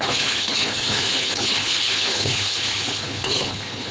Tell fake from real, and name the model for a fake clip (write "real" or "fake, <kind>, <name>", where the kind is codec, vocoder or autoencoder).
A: fake, codec, HILCodec